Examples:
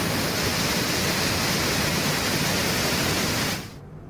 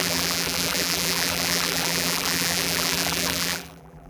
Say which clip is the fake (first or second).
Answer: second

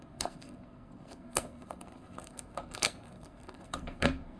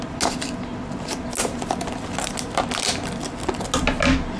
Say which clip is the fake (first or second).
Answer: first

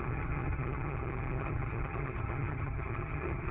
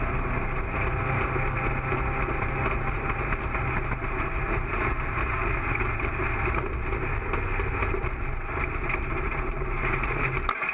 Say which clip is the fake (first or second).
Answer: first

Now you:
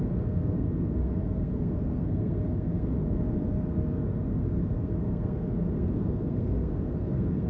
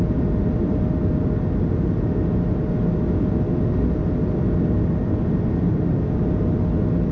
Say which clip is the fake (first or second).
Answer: first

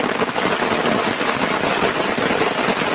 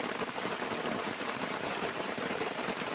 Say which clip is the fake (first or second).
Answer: second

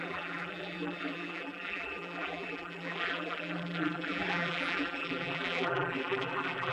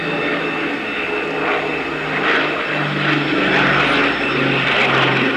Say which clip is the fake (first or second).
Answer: first